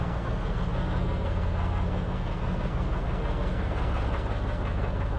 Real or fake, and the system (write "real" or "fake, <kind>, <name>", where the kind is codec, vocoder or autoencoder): fake, codec, SNAC